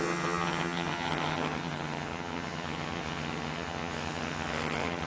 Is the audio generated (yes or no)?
yes